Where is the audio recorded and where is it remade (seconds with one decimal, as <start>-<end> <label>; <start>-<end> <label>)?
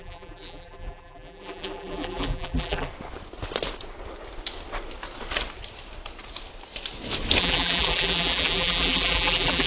0.0-2.9 remade; 2.9-7.4 recorded; 7.4-9.7 remade